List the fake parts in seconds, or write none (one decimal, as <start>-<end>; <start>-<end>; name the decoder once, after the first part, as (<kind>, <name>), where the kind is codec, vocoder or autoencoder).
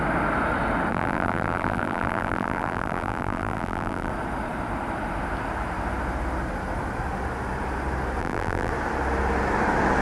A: 0.9-4.1 (vocoder, BigVGAN v2); 8.2-8.7